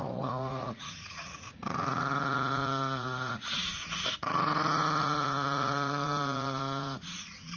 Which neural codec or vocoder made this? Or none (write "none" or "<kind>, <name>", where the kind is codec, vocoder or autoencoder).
vocoder, Vocos